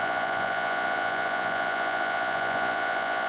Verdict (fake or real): fake